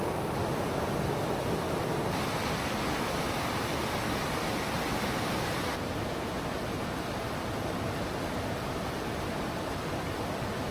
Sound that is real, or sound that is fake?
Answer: real